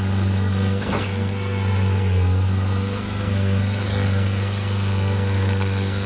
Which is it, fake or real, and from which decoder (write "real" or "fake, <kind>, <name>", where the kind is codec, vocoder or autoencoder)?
fake, codec, SNAC